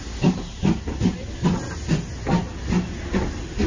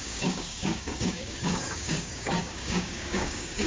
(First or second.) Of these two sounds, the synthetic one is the second